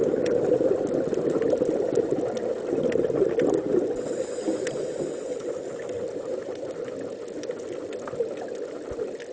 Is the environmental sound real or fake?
real